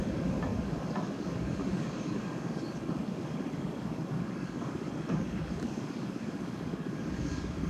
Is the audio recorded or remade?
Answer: remade